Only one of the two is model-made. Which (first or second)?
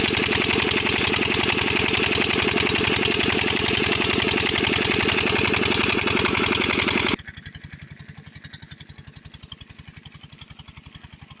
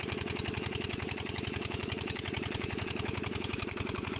second